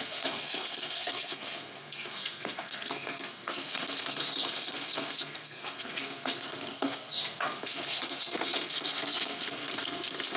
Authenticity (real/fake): fake